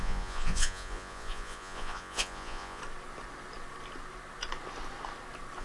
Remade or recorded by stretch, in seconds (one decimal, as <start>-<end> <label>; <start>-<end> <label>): 0.0-2.8 remade; 2.8-5.6 recorded